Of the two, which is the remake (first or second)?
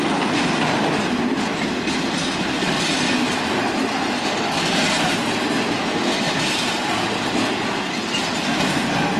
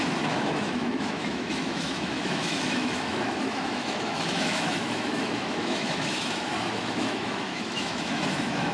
second